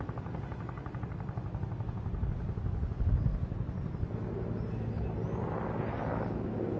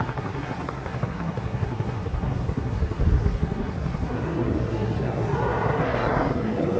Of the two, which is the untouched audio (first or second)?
first